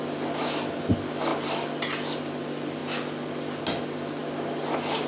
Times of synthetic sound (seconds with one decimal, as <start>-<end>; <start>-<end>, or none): none